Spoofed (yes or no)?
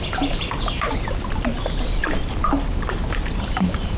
no